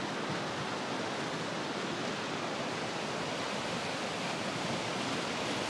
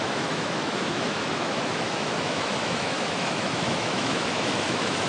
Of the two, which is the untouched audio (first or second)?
first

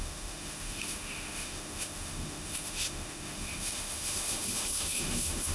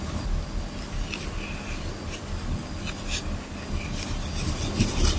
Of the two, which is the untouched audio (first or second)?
second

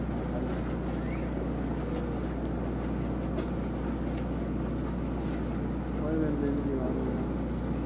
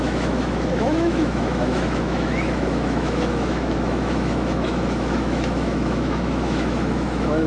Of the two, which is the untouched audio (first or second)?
first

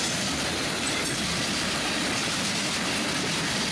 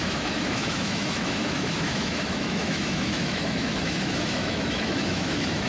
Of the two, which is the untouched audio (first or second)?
first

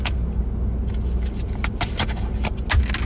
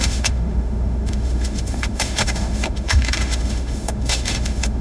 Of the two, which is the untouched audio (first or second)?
first